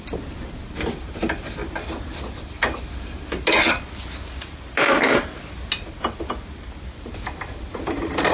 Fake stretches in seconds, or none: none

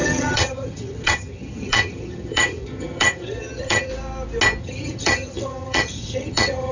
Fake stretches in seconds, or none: 0.0-3.9 (vocoder, HiFi-GAN); 4.6-6.7

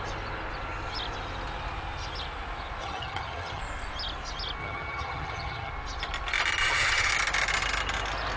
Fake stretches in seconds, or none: 2.8-3.6 (vocoder, HiFi-GAN); 4.6-5.7; 6.6-7.1

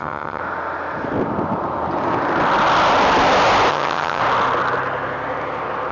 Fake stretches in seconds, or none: 0.0-0.4 (vocoder, HiFi-GAN); 3.7-4.2